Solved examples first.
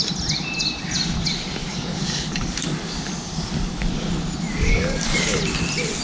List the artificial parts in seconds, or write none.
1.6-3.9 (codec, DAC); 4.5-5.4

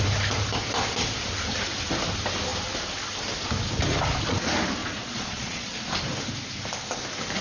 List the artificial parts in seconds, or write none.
4.8-5.8 (vocoder, Vocos)

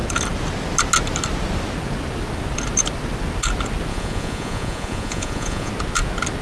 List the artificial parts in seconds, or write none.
3.9-5.7 (vocoder, Vocos)

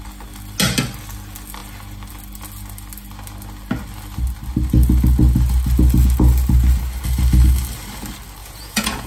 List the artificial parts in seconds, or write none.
8.4-9.1 (vocoder, Vocos)

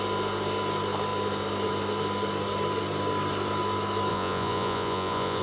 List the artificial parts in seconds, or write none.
4.1-5.4 (vocoder, Vocos)

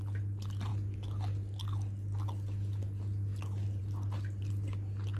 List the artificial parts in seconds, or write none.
none